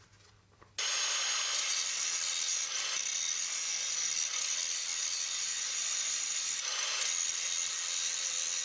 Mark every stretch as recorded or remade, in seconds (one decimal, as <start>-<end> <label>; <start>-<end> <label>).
0.0-8.6 recorded